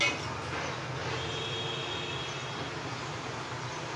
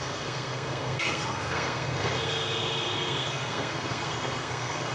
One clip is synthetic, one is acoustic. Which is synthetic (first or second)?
second